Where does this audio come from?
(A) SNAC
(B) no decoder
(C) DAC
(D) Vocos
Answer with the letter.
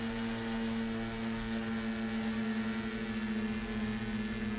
B